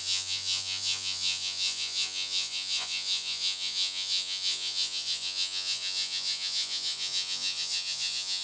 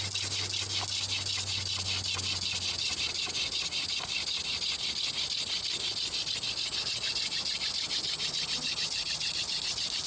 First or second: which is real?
second